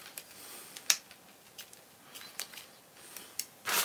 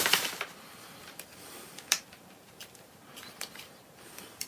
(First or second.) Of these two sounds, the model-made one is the second